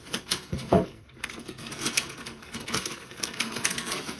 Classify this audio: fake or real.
fake